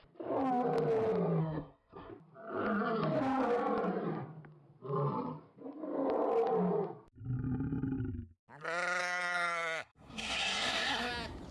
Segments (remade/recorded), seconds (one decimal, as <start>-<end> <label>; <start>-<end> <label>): 0.0-1.4 recorded; 1.4-2.1 remade; 2.1-9.0 recorded; 9.0-11.1 remade; 11.1-11.5 recorded